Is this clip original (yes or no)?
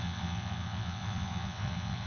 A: no